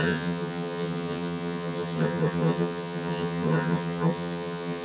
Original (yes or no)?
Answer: no